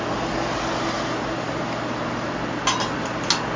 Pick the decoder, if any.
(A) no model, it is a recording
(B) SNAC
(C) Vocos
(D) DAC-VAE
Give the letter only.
A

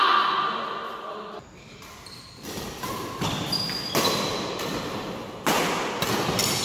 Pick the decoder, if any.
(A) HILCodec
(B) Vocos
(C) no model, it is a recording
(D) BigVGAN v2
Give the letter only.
C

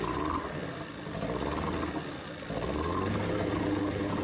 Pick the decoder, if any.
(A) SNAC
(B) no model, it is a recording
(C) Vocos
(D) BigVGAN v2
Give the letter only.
B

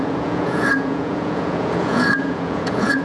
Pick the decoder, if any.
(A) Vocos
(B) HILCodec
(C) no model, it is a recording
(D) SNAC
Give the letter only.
A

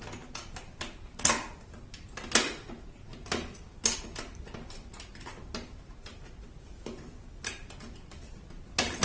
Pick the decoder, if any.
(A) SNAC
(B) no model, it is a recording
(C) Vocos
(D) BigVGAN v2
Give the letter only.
B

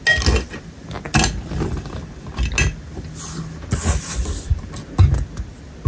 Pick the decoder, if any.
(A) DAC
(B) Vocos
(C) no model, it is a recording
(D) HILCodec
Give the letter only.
C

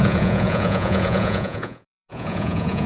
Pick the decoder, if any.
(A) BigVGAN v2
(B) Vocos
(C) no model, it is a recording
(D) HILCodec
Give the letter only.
B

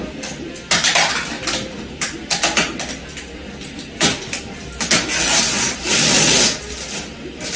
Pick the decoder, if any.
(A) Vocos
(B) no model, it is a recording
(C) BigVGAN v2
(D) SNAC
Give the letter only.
B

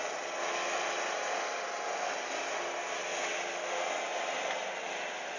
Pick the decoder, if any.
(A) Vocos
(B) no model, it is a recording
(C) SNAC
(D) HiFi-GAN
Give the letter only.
B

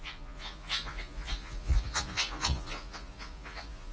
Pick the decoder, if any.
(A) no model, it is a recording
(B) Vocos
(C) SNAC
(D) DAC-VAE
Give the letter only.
B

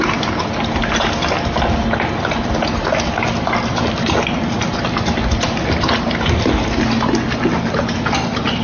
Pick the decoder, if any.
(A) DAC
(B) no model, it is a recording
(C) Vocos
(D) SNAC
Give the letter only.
B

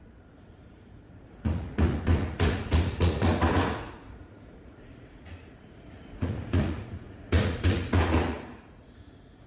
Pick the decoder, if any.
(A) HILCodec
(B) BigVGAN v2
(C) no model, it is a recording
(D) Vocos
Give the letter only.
D